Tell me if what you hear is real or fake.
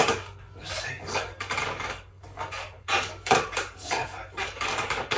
fake